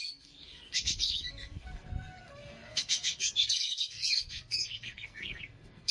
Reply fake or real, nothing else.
fake